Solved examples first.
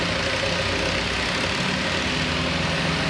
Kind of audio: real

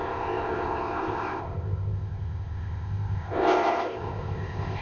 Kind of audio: fake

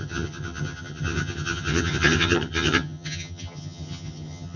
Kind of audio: fake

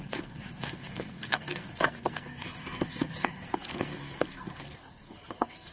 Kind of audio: fake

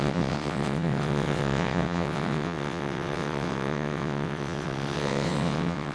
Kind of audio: fake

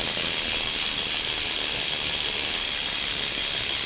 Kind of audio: real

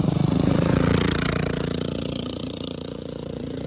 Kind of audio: fake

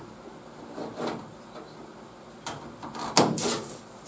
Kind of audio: real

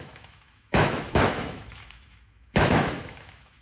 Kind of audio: fake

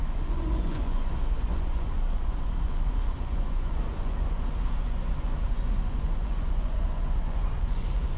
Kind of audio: fake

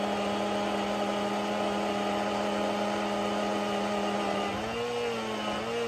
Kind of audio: real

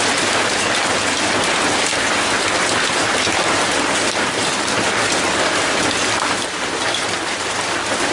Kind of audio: real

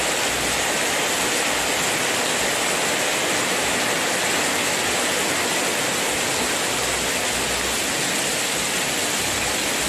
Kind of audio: real